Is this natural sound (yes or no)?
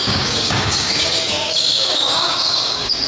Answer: no